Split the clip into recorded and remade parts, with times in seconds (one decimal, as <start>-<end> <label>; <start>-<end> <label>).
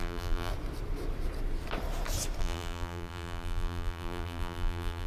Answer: 0.0-0.5 remade; 0.5-2.4 recorded; 2.4-5.1 remade